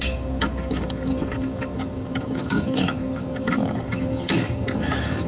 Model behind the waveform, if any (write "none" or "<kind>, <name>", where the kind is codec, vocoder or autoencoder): codec, DAC